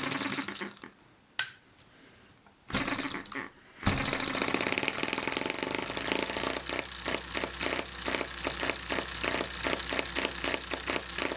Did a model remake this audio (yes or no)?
no